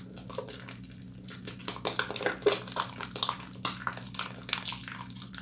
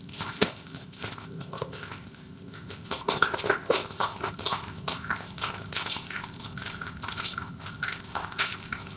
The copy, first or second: second